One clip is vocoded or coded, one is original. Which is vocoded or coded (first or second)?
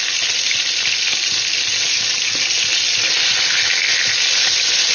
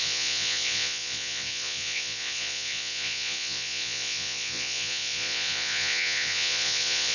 second